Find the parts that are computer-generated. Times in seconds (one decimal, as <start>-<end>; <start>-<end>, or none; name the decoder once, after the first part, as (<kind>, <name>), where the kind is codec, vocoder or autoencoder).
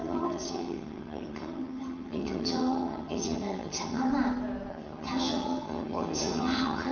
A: 0.0-4.1 (vocoder, HiFi-GAN); 4.7-6.9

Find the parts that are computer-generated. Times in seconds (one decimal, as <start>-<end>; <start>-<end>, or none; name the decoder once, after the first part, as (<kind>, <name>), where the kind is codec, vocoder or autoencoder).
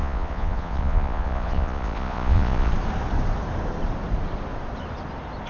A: 0.0-2.7 (vocoder, Vocos)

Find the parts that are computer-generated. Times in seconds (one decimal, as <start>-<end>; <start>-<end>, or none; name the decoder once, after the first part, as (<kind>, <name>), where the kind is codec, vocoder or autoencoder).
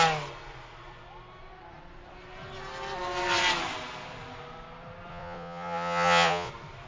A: 5.1-6.5 (vocoder, Vocos)